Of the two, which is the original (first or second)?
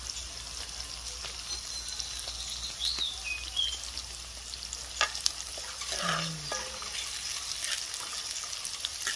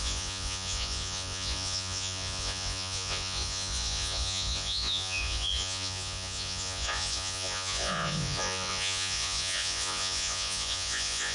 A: first